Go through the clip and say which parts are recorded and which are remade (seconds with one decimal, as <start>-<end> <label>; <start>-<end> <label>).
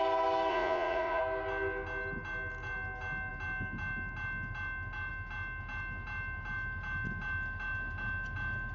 0.0-0.5 recorded; 0.5-1.2 remade; 1.2-8.7 recorded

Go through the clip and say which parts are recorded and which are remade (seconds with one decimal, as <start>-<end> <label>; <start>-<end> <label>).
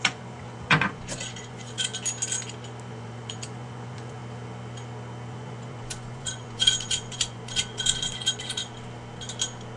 0.0-1.9 remade; 1.9-2.9 recorded; 2.9-4.2 remade; 4.2-5.3 recorded; 5.3-8.6 remade; 8.6-9.8 recorded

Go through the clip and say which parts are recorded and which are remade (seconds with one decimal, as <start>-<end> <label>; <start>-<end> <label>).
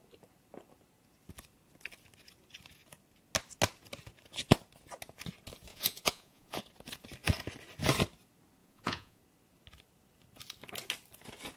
0.0-5.7 recorded; 5.7-6.6 remade; 6.6-8.6 recorded; 8.6-9.2 remade; 9.2-11.6 recorded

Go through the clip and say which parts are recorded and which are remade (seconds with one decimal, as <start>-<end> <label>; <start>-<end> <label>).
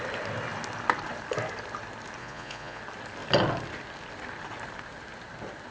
0.0-2.2 recorded; 2.2-2.8 remade; 2.8-5.7 recorded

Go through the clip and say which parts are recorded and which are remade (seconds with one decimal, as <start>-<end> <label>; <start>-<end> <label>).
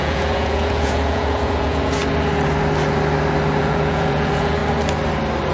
0.0-2.0 remade; 2.0-3.6 recorded; 3.6-4.6 remade; 4.6-5.5 recorded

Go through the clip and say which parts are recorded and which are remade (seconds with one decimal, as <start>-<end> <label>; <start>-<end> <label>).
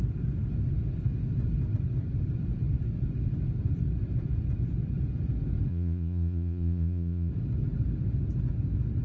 0.0-5.7 recorded; 5.7-7.3 remade; 7.3-9.0 recorded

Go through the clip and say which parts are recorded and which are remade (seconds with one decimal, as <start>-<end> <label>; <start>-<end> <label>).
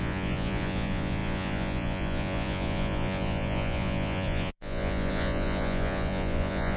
0.0-6.8 remade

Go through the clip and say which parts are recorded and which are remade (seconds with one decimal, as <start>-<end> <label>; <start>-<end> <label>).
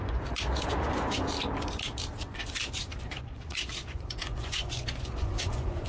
0.0-1.3 remade; 1.3-2.2 recorded; 2.2-5.9 remade